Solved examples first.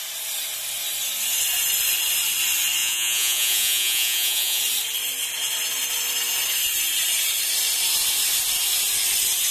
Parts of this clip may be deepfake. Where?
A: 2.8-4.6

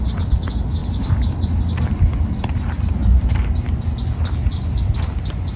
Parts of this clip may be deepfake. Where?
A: 0.8-1.4; 4.5-5.6

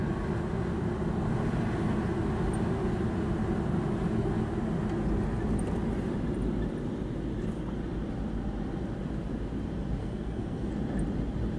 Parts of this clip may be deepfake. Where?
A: 10.0-10.7

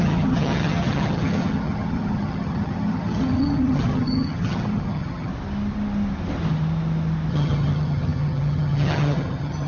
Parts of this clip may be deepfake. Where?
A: 0.0-5.3; 7.3-9.7

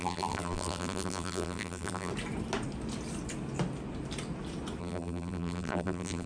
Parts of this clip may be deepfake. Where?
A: 0.0-2.1; 4.8-6.3